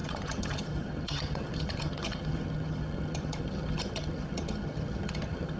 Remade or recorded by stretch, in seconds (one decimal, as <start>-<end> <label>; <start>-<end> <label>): 0.0-5.6 remade